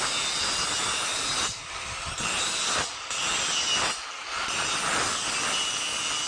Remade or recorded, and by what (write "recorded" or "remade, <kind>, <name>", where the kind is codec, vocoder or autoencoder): recorded